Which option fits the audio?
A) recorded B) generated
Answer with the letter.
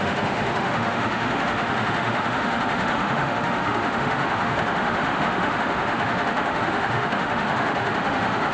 B